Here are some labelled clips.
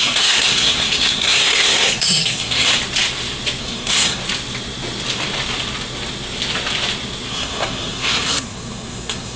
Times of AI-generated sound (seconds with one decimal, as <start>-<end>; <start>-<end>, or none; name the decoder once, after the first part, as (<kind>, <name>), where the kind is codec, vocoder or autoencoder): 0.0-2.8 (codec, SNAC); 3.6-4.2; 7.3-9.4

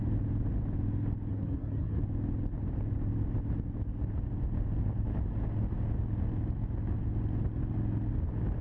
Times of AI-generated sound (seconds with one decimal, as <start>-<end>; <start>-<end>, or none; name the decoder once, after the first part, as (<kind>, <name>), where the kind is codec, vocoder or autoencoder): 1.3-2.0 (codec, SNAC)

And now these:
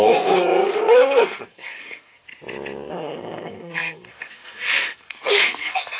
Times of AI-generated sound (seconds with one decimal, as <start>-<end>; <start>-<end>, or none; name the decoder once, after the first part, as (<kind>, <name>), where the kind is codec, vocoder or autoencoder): 0.0-2.3 (codec, SNAC); 2.9-6.0